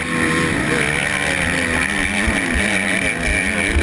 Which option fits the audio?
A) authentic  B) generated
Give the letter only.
A